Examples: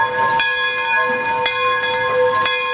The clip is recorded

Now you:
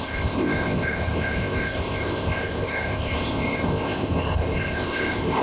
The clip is remade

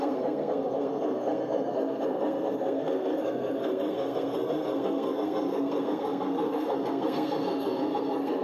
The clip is remade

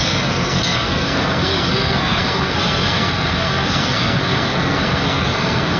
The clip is remade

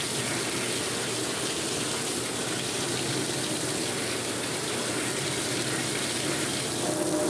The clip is recorded